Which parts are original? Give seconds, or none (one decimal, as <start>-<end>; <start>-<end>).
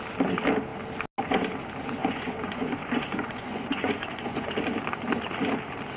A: 0.0-2.0; 4.5-6.0